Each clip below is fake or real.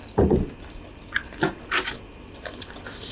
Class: real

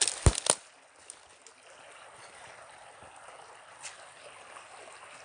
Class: real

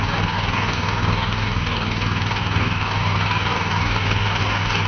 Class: fake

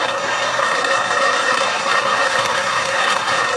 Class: fake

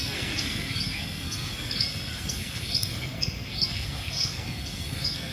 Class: fake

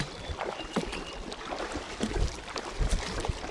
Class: real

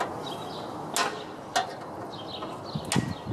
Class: real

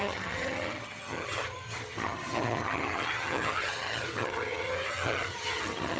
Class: fake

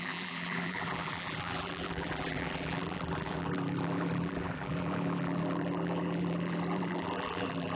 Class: fake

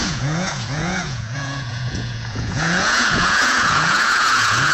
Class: fake